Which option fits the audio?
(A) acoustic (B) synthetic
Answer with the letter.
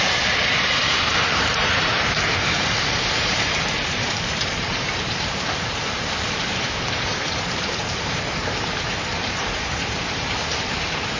B